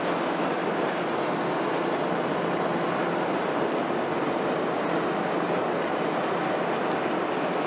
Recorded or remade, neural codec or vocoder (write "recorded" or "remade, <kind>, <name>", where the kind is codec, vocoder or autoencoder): recorded